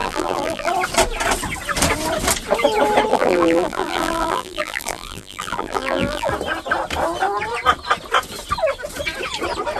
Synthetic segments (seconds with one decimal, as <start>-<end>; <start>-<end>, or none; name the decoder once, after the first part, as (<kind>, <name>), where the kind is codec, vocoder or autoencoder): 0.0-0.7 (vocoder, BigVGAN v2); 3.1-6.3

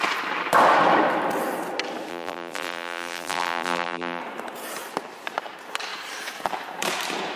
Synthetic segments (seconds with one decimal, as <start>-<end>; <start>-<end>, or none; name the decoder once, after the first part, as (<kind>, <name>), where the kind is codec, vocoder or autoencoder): 2.1-4.2 (vocoder, BigVGAN v2)

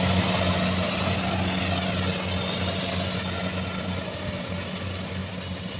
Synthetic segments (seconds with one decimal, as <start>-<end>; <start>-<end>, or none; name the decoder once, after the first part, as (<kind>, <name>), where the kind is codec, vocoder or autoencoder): 5.2-5.8 (vocoder, BigVGAN v2)

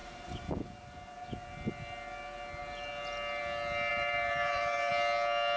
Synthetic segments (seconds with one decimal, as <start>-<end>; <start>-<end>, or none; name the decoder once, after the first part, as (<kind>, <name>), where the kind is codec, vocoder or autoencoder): 3.9-4.9 (vocoder, BigVGAN v2)

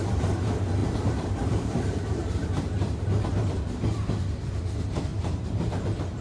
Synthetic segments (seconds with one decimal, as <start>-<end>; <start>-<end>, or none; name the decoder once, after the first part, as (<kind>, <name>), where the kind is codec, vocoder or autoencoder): 0.8-3.0 (vocoder, BigVGAN v2); 5.1-5.7